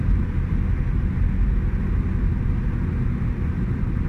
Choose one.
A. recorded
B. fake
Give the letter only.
A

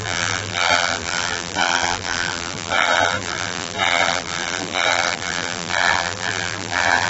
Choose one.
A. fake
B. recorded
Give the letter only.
A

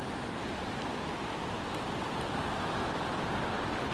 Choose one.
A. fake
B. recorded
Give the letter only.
B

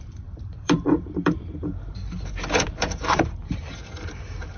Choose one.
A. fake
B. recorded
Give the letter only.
A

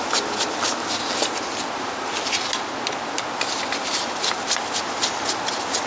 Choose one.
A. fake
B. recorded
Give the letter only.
B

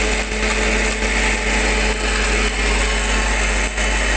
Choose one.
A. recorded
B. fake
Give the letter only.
A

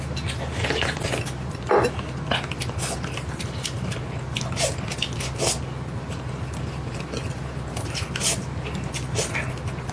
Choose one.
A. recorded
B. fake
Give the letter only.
A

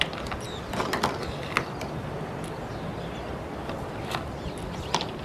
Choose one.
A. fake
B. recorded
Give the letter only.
B